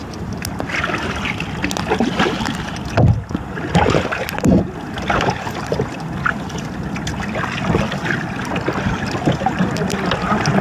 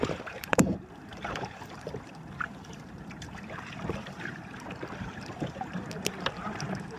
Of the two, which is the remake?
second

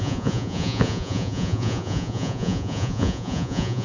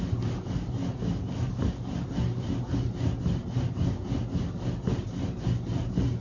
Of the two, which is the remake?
first